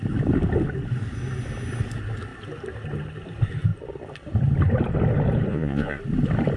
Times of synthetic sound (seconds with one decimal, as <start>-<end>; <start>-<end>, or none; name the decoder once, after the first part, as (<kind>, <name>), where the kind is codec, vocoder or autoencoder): 5.5-6.0 (vocoder, Vocos)